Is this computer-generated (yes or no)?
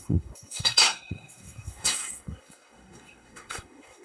yes